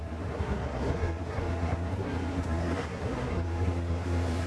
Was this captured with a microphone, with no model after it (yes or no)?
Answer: no